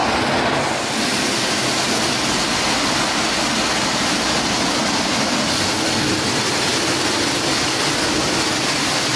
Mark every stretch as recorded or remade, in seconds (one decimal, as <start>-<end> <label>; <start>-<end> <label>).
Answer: 0.0-6.7 recorded; 6.7-7.8 remade; 7.8-9.2 recorded